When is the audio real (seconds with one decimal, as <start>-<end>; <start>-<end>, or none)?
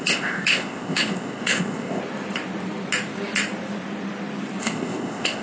2.0-4.6